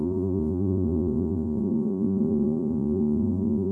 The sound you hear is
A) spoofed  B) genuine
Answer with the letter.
A